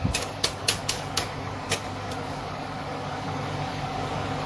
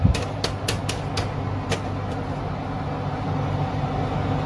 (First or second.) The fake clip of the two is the first